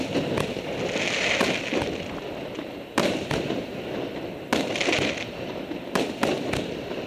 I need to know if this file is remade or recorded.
recorded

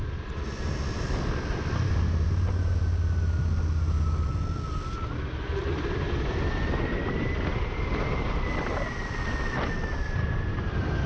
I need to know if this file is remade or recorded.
recorded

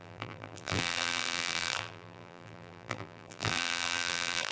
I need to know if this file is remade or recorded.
remade